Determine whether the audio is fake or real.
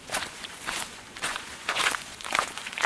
fake